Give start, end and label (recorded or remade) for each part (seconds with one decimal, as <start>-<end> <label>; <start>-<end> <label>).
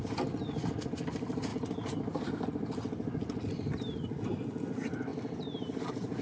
0.0-6.2 recorded